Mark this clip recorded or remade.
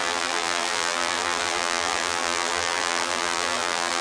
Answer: remade